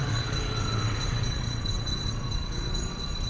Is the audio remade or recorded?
remade